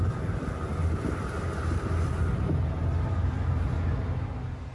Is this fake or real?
real